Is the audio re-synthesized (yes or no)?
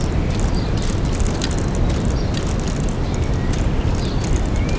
no